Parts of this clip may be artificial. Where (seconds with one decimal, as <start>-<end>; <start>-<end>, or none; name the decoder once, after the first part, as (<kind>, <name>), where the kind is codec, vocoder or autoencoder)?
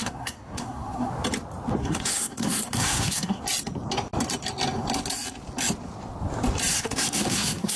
0.0-1.1 (codec, SNAC); 1.8-3.4; 6.7-7.8